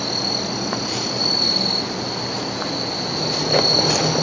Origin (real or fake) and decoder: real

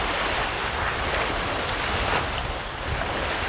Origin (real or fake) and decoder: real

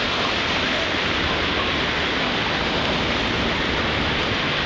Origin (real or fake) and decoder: real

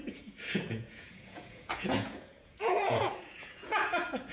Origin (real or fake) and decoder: fake, vocoder, Vocos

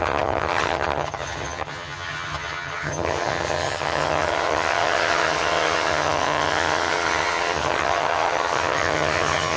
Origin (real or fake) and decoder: fake, vocoder, HiFi-GAN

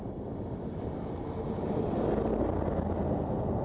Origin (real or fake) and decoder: real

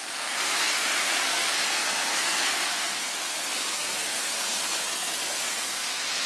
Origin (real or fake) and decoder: fake, codec, SNAC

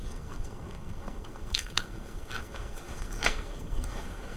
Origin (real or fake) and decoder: fake, codec, SNAC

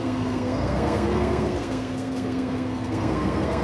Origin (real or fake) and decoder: fake, codec, SNAC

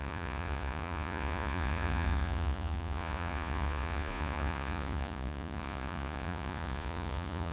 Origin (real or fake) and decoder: fake, vocoder, Vocos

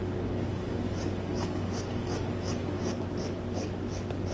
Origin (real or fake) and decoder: fake, codec, DAC